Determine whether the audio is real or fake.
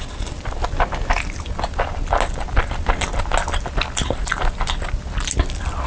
real